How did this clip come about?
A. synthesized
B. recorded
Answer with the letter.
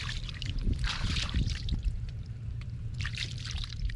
A